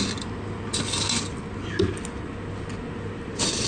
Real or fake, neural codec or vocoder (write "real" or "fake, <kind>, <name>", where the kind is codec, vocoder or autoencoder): real